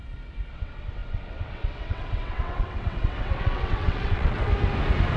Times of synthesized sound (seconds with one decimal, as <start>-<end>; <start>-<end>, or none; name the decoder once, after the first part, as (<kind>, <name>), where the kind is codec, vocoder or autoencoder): 0.5-4.5 (vocoder, WaveNeXt)